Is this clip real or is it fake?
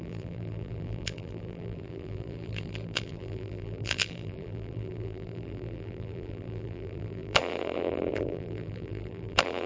fake